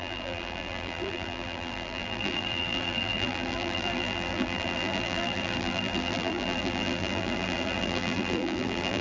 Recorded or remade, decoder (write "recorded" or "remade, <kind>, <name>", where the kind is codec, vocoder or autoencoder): remade, vocoder, BigVGAN v2